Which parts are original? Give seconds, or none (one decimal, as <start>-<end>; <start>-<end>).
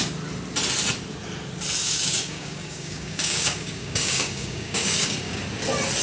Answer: 0.0-1.8; 5.4-6.0